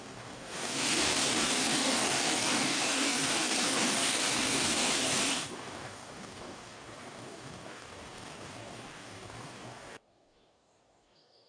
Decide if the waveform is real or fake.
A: fake